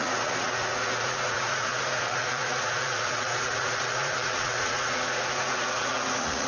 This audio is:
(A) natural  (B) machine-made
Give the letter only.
B